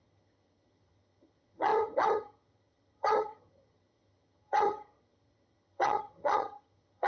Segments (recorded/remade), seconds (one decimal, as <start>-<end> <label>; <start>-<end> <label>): 0.0-7.1 remade